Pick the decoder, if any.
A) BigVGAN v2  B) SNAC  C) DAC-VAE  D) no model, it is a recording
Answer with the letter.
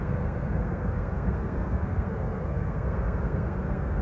B